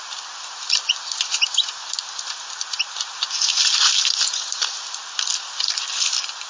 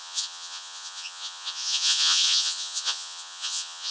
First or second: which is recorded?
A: first